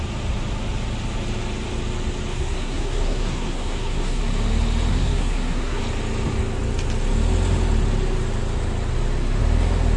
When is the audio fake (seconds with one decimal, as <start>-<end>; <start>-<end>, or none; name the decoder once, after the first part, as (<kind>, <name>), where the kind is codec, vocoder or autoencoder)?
2.3-4.2 (codec, SNAC); 4.9-5.8